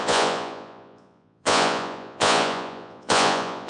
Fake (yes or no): yes